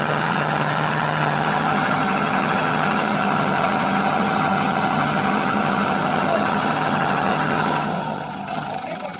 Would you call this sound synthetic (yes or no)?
yes